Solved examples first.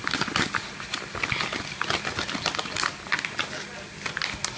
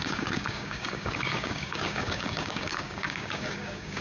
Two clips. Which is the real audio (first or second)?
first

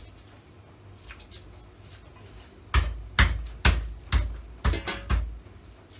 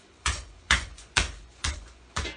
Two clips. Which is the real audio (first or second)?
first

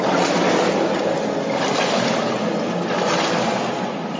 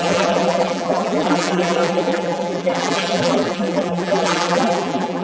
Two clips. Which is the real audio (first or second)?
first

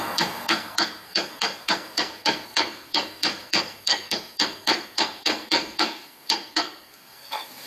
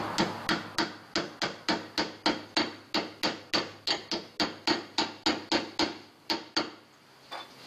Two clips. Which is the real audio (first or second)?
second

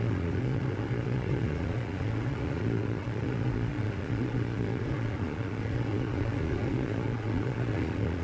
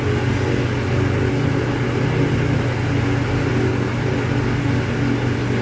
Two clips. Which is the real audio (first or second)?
second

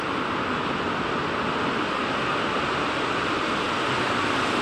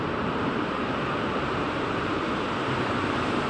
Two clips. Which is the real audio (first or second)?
first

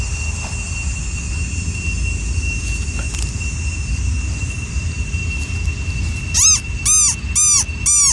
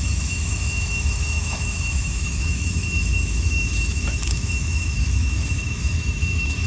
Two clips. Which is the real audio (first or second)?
first